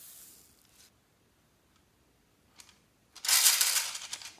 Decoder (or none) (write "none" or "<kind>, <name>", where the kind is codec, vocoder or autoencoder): none